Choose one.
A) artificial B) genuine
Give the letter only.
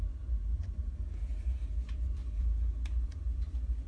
A